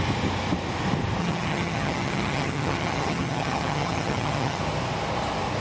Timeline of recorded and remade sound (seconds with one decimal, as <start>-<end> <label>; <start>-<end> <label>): 0.0-1.2 recorded; 1.2-4.6 remade; 4.6-5.6 recorded